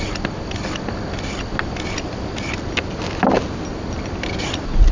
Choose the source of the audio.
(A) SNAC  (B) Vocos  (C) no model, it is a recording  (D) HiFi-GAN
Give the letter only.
C